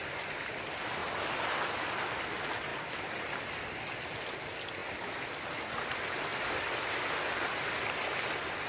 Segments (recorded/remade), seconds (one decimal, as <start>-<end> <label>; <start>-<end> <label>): 0.0-2.7 recorded; 2.7-3.6 remade; 3.6-6.3 recorded; 6.3-7.1 remade; 7.1-8.7 recorded